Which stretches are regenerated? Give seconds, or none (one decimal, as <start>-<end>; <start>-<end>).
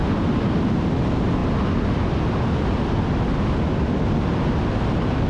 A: 0.0-0.9